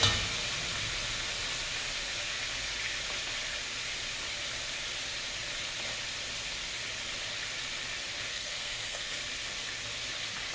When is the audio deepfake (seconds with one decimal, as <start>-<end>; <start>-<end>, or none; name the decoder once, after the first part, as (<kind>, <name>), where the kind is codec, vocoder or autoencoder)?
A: 8.3-9.2 (codec, SNAC)